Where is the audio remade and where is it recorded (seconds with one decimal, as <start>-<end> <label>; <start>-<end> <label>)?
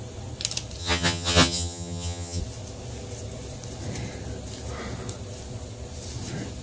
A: 0.0-0.8 recorded; 0.8-2.4 remade; 2.4-6.6 recorded